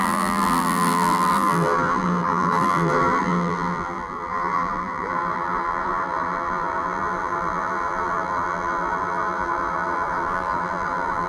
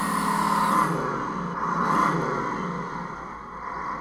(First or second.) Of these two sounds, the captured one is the second